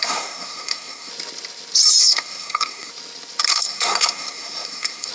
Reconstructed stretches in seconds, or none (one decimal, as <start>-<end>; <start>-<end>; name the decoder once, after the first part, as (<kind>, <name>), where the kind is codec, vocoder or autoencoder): 0.0-1.1 (codec, SNAC); 2.0-2.9; 3.5-5.1